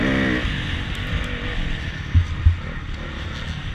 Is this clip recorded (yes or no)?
yes